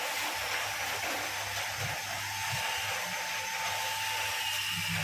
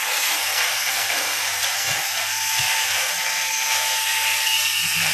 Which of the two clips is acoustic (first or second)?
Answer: first